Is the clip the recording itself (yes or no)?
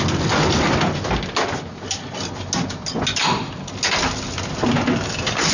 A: yes